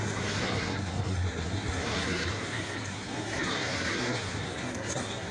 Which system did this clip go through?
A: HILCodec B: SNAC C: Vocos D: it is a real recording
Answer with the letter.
B